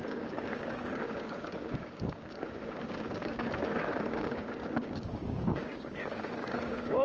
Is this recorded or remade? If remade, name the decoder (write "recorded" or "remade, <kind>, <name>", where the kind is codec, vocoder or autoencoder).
remade, codec, DAC